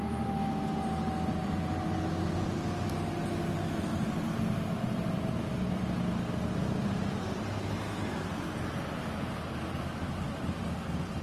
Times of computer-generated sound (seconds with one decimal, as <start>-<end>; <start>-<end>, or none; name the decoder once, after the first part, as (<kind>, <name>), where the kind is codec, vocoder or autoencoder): 3.9-6.0 (vocoder, BigVGAN v2)